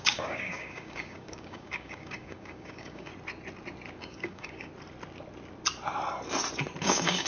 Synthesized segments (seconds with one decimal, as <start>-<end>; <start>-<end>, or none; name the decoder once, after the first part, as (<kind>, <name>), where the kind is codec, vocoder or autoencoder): 0.0-3.1 (codec, DAC); 4.0-4.7; 6.8-7.3